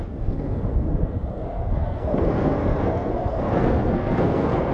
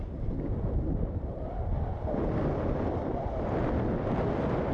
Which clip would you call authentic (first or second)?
second